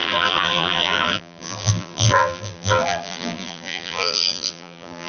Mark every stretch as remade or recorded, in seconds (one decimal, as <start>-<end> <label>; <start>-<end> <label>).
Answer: 0.0-5.1 remade